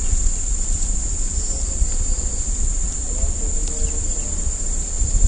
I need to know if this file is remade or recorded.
recorded